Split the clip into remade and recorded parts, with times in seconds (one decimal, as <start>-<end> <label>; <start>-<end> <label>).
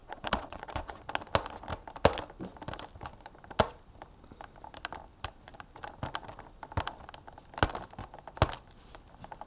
0.0-1.0 remade; 1.0-9.5 recorded